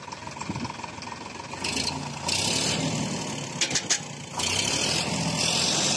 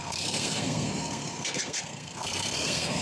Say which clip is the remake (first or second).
second